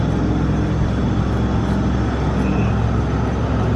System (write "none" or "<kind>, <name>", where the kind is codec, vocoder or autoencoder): none